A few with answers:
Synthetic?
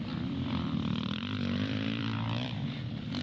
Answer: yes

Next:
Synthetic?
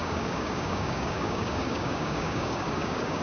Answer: yes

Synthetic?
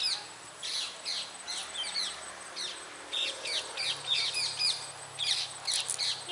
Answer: no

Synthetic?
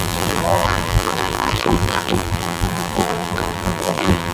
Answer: yes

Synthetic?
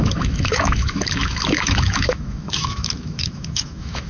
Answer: yes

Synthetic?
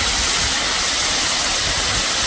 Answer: no